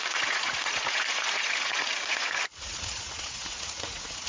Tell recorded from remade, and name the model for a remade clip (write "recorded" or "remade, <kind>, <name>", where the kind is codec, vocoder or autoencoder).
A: remade, vocoder, Vocos